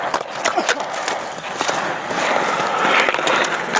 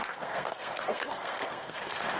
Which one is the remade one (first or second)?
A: second